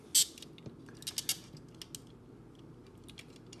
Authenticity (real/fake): real